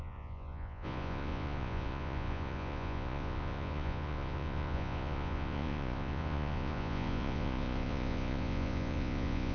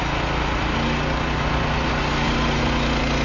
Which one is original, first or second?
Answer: second